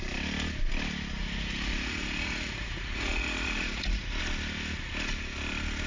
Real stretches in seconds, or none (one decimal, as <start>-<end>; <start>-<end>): 0.0-1.2; 4.2-5.9